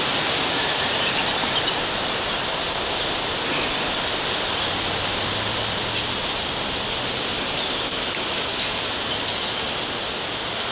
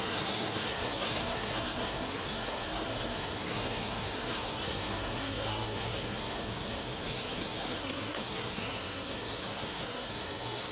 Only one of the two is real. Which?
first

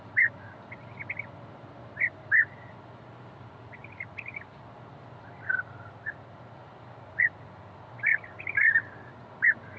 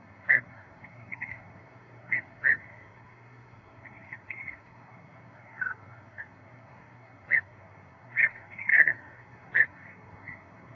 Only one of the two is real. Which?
first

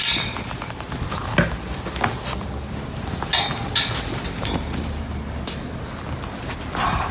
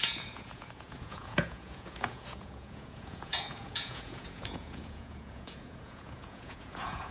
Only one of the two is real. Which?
first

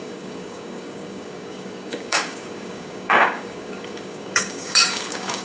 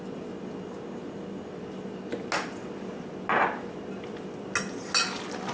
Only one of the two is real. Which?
second